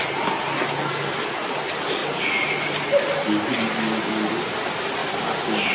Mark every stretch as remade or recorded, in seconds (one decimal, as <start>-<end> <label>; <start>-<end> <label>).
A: 0.0-5.7 recorded